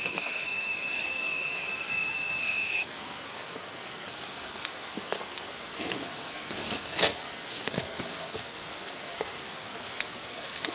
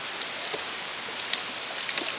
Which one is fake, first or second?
first